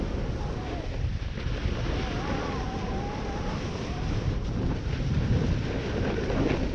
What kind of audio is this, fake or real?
real